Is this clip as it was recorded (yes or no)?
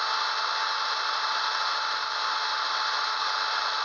yes